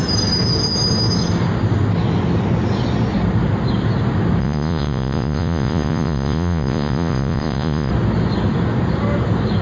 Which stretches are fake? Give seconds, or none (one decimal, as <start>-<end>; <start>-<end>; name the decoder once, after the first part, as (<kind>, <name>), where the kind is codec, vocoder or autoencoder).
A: 4.4-7.9 (vocoder, Vocos)